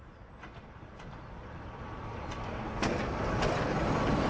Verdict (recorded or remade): recorded